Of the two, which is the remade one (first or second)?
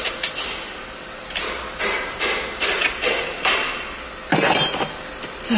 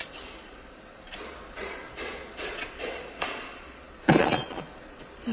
second